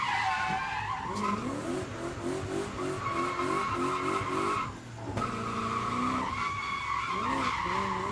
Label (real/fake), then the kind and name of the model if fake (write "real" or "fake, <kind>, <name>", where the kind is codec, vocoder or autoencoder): real